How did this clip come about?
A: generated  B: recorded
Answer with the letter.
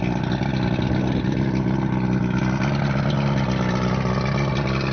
B